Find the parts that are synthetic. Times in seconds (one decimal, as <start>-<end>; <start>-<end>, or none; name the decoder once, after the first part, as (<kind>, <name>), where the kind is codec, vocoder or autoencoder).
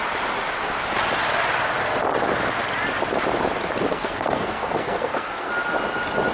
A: 3.9-5.5 (codec, SNAC)